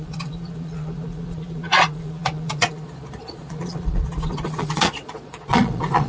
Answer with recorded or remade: remade